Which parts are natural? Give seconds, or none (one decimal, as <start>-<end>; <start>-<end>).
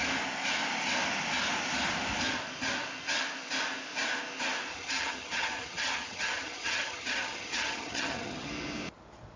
0.0-4.7; 8.5-9.4